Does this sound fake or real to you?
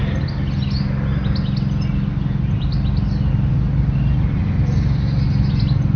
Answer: real